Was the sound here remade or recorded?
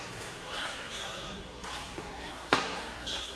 remade